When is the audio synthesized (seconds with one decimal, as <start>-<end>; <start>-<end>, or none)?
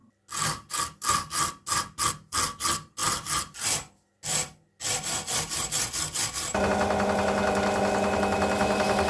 none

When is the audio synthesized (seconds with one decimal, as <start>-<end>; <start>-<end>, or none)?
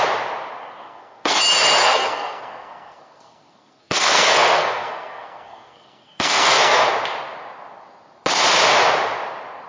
0.8-1.4; 1.8-6.9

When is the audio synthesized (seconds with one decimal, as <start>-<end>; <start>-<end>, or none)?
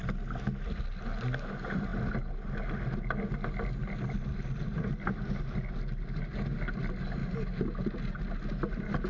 none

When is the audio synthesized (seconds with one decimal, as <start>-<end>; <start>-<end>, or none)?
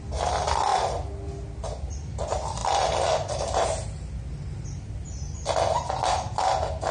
none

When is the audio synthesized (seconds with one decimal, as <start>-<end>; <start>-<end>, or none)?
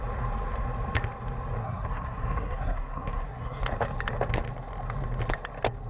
1.6-3.6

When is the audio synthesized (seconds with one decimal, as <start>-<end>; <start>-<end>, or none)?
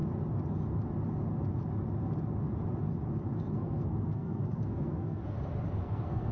3.5-5.2; 5.8-6.3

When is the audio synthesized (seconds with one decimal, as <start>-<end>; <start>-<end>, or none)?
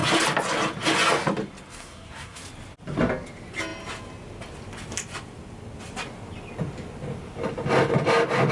1.7-2.4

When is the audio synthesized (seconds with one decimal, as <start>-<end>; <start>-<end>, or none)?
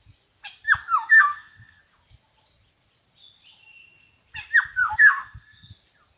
1.1-1.8; 4.8-5.7